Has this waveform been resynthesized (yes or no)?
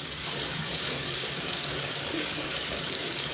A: yes